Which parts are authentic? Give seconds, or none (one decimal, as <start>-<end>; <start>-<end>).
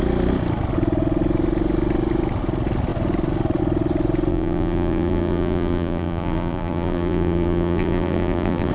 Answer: 0.0-4.3